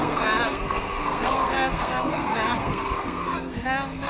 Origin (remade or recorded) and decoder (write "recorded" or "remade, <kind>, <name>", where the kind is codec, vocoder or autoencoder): remade, codec, SNAC